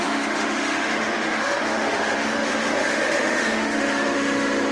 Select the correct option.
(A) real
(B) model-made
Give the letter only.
B